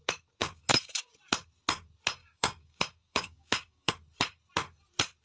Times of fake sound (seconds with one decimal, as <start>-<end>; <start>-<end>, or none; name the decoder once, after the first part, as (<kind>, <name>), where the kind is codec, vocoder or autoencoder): 0.4-1.1 (codec, DAC); 2.2-3.9

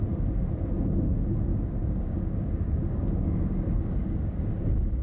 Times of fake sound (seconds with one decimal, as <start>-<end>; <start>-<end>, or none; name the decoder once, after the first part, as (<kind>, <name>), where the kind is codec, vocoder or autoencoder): 1.5-4.5 (codec, DAC)

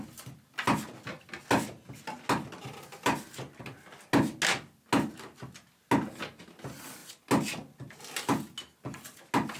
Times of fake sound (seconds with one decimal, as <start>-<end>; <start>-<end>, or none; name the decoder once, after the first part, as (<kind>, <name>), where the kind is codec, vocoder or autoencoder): none

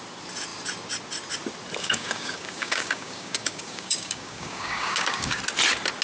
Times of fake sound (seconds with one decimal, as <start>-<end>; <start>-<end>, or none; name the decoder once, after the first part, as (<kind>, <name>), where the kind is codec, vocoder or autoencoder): 1.8-5.4 (codec, DAC)

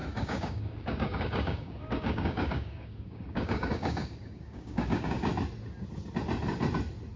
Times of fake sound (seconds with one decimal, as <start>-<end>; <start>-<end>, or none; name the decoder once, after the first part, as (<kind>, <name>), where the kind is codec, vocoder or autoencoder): 0.0-5.3 (codec, DAC)

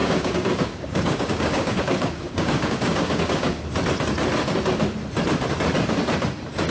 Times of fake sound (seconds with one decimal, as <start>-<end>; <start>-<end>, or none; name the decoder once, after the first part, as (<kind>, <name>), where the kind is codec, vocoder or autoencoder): 0.0-3.6 (codec, DAC)

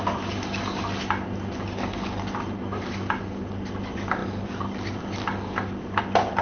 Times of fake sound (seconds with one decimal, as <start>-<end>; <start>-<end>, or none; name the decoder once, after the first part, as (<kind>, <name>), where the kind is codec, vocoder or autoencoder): none

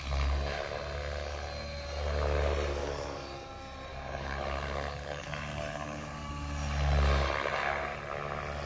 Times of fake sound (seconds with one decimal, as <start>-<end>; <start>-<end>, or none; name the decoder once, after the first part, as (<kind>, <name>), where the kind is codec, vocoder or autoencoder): 2.8-3.5 (codec, DAC); 3.9-6.3